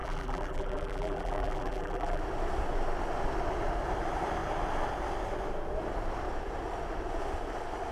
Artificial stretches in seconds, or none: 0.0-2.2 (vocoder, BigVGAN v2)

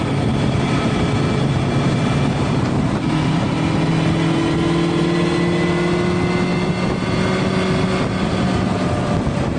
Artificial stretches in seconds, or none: 0.0-3.5 (vocoder, BigVGAN v2)

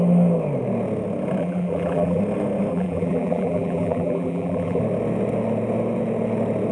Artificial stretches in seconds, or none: 1.4-2.2 (vocoder, BigVGAN v2); 2.7-4.8

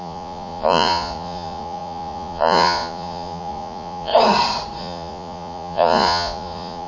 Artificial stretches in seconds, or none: 0.0-4.1 (vocoder, Vocos); 4.8-6.9